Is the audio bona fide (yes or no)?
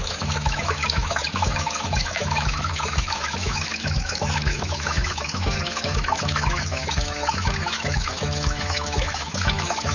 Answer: no